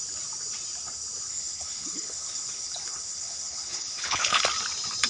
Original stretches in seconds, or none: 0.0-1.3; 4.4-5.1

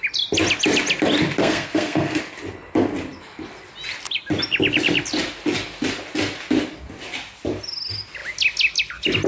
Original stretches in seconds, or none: 0.0-1.4; 2.2-9.3

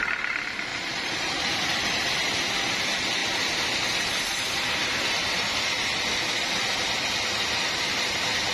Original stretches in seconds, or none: 0.0-0.7; 2.4-8.5

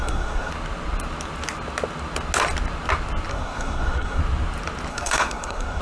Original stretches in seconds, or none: 0.5-3.3; 4.2-4.9

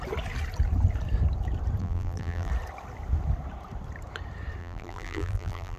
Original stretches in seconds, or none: 0.0-1.8; 2.5-4.6

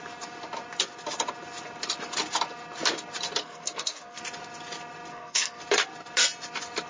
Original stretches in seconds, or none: 0.0-3.4; 4.2-5.1; 5.6-6.9

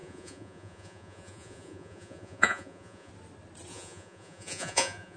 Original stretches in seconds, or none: 3.1-3.7